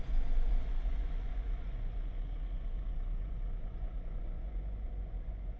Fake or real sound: fake